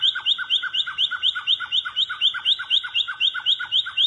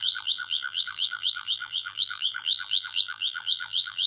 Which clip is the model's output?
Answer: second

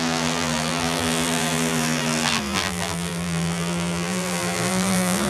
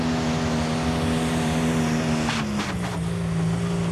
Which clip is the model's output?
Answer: first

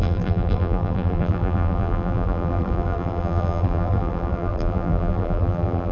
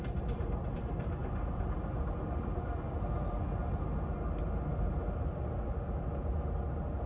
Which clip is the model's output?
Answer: first